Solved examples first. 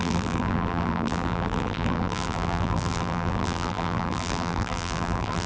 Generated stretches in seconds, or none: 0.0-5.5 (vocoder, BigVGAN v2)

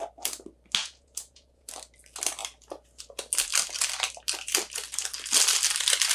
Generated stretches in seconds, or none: 0.8-1.7 (vocoder, Vocos)

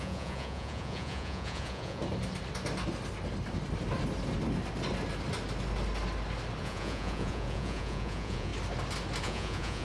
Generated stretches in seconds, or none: 0.0-2.0 (vocoder, Vocos); 6.6-8.5; 9.2-9.8

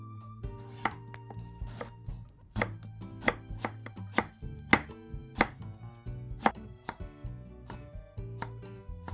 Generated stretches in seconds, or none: none

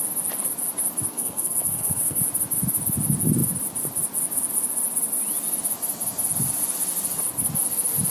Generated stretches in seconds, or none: 1.1-2.2 (codec, SNAC)

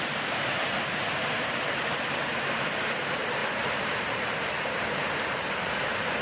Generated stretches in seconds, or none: 0.0-6.2 (vocoder, BigVGAN v2)

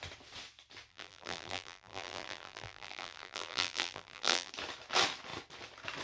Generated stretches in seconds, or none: 0.9-4.5 (vocoder, BigVGAN v2)